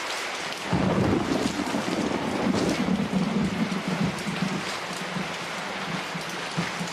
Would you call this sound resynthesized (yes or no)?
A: no